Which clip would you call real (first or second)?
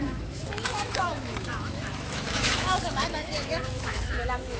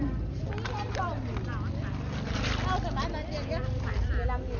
second